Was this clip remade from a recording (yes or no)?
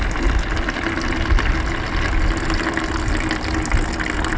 no